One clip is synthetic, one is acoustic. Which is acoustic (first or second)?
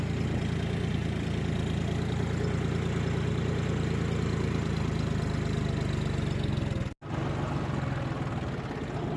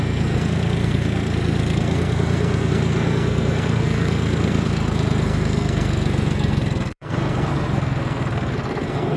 first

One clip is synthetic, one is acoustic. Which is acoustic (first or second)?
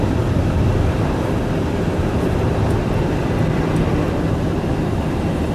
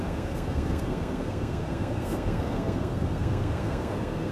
first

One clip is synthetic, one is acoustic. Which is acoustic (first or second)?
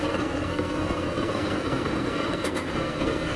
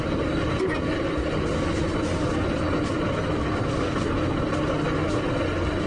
second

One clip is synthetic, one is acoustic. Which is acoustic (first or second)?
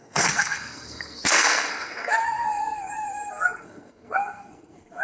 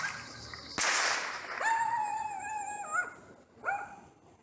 second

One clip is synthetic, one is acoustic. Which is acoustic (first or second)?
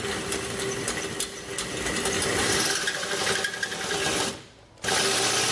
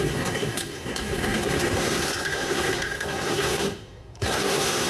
first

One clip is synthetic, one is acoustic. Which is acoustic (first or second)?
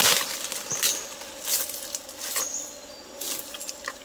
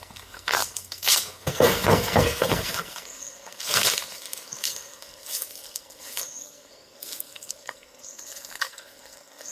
first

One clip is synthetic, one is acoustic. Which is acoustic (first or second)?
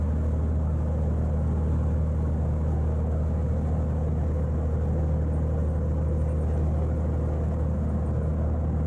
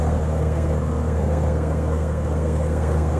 first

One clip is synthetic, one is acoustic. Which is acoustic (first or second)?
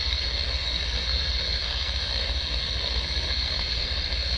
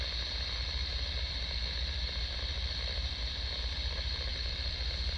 second